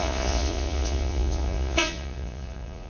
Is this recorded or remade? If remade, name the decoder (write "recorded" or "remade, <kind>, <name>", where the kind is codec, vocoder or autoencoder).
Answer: remade, vocoder, Vocos